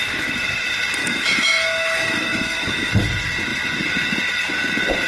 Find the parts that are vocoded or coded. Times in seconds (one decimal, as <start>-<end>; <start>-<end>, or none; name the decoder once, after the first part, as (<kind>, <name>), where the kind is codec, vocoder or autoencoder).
1.0-2.9 (autoencoder, DAC-VAE)